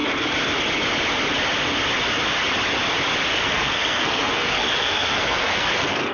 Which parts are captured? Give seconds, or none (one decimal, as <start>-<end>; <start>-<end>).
0.0-3.3